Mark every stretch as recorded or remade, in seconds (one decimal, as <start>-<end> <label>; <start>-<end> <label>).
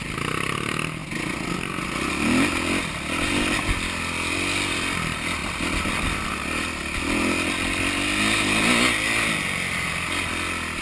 0.0-10.8 recorded